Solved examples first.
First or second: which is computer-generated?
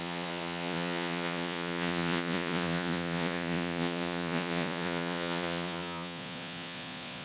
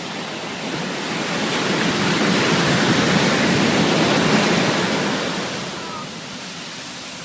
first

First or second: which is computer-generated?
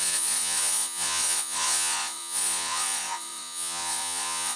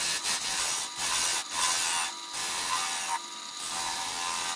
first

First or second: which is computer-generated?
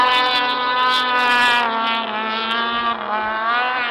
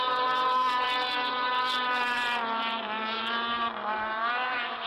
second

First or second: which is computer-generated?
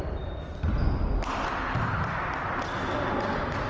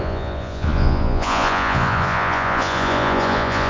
second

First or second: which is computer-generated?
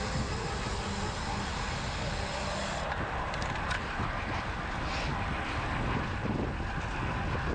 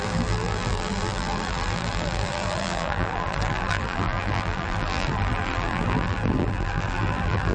second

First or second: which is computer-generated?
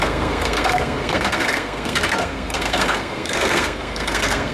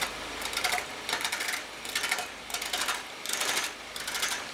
first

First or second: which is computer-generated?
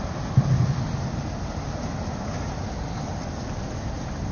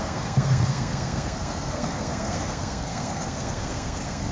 second